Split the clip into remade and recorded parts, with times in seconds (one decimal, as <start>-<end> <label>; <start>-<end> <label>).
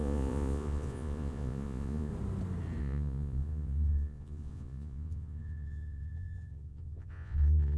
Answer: 0.0-2.1 remade; 2.1-2.8 recorded; 2.8-7.8 remade